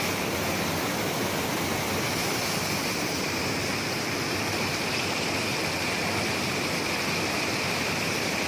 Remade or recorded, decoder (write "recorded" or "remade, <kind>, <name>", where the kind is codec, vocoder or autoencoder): recorded